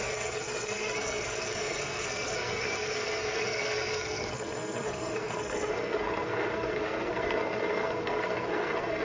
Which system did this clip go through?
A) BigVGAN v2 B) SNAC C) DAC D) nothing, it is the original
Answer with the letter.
B